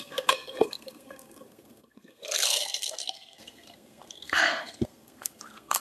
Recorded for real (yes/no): no